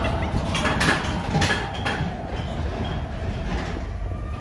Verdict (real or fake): real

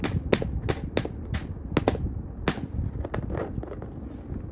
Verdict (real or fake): real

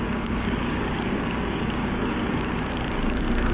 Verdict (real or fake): fake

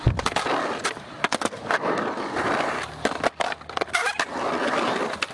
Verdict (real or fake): real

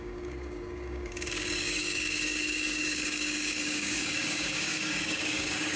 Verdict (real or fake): fake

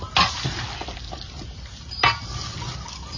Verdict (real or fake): real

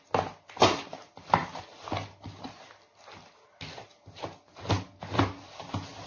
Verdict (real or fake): real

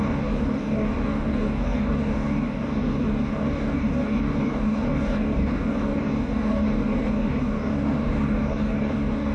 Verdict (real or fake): fake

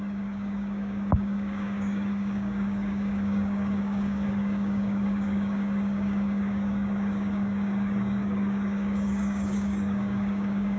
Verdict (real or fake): fake